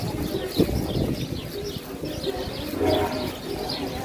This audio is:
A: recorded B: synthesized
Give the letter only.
A